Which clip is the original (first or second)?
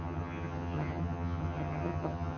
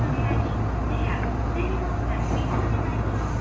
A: second